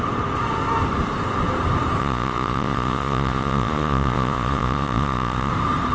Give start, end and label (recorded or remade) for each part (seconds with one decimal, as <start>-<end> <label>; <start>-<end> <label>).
0.0-2.0 recorded; 2.0-5.5 remade; 5.5-5.9 recorded